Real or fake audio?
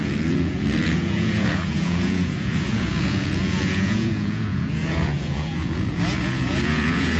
fake